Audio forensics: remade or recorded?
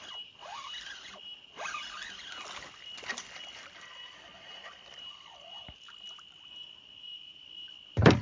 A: recorded